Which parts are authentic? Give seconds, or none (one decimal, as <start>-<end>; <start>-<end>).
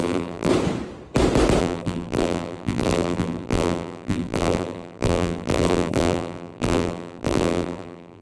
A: 0.5-1.6